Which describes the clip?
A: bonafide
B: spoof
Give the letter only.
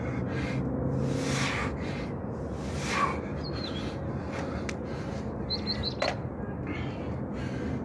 A